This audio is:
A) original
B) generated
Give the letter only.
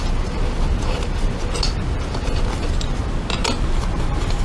A